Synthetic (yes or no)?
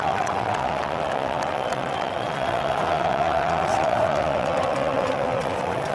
yes